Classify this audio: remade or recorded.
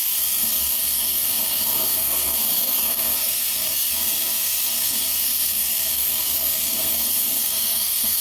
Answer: remade